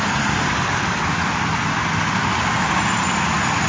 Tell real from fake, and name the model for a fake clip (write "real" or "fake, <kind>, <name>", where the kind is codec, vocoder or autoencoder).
real